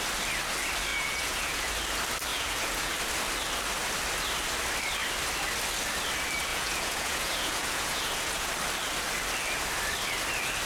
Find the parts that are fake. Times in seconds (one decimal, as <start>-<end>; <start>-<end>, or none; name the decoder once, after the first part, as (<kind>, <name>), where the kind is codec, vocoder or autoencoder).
0.9-1.7 (vocoder, Vocos); 2.3-2.9; 6.5-8.5